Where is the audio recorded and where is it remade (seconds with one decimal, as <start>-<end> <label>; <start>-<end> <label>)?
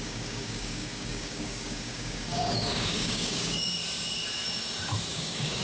0.0-3.7 remade; 3.7-5.1 recorded; 5.1-5.6 remade